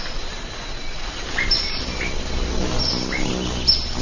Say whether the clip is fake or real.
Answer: real